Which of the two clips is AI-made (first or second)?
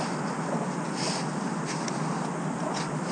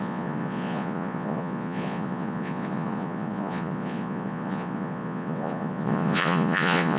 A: second